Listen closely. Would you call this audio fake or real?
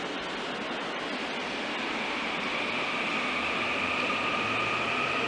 real